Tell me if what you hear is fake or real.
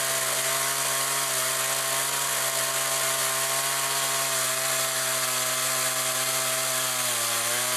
real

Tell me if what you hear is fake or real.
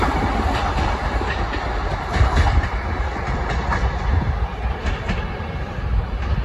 real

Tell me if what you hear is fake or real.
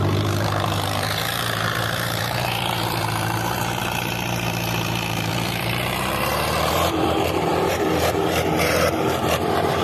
fake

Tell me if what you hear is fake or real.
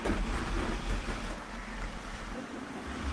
real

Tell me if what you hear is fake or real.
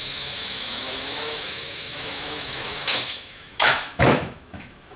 fake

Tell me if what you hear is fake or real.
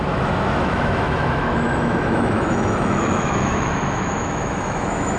fake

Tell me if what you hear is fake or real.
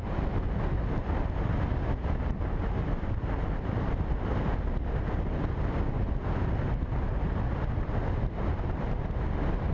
real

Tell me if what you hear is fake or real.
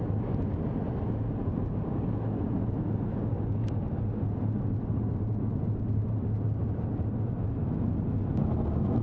real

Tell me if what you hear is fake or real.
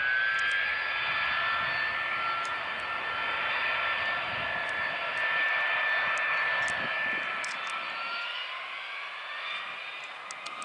real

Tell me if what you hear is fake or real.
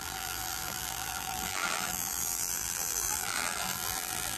fake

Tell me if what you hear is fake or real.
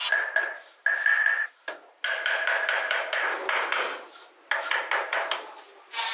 real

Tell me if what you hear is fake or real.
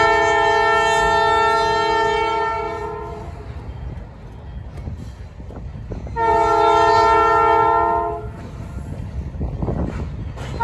real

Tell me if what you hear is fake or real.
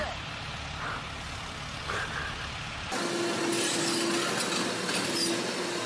real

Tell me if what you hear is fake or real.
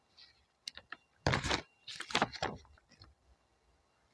real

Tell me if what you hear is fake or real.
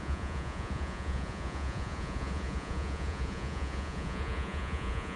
fake